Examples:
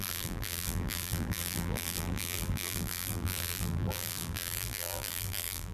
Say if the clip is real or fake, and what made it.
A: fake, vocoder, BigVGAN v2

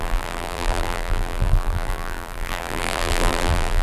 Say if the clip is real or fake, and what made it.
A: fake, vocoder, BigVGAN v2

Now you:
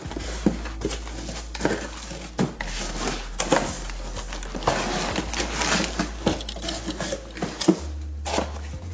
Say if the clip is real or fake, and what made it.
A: real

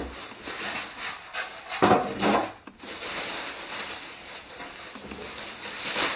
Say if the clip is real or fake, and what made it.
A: real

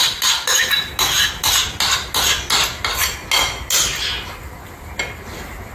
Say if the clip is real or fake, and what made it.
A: real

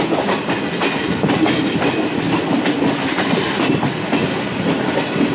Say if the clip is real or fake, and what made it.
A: real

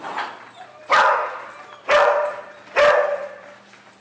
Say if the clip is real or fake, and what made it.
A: fake, vocoder, BigVGAN v2